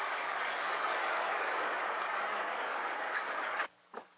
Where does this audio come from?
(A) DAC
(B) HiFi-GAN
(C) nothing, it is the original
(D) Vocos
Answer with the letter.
A